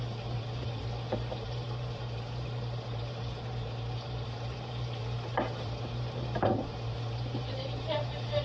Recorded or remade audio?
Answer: remade